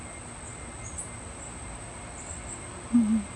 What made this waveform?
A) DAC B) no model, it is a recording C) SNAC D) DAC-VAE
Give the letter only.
B